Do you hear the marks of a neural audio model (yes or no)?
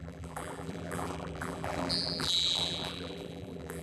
yes